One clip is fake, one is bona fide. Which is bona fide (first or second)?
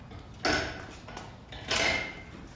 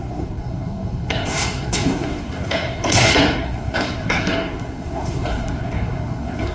first